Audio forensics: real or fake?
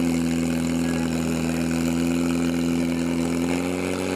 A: real